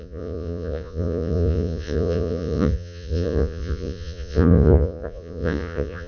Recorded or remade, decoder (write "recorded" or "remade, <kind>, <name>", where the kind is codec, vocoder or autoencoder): remade, vocoder, Vocos